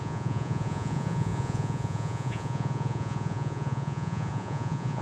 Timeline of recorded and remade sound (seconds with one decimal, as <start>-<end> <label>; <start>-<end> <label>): 0.0-5.0 remade